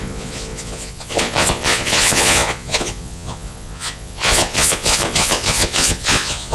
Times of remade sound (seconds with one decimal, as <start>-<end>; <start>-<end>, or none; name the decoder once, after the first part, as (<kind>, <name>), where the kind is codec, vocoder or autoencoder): 0.0-6.5 (vocoder, Vocos)